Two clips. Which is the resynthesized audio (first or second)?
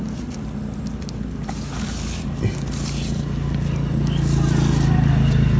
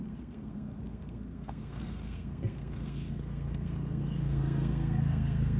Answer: second